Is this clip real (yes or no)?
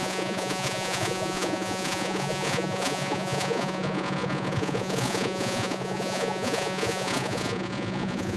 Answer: no